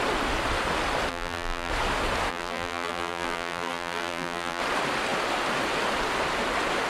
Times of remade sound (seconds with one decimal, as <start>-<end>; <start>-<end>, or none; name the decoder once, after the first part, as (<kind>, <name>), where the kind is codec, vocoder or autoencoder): 1.1-1.7 (vocoder, BigVGAN v2); 2.3-4.6